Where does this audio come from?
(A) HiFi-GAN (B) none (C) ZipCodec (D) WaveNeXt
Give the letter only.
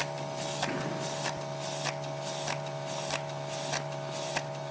B